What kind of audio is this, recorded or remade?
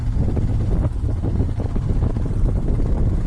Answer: remade